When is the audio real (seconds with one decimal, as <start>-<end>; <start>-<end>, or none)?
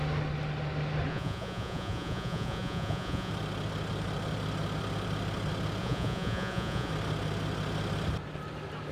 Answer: 0.0-1.1; 3.3-5.8; 6.9-8.9